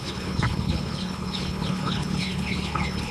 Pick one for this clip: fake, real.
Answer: fake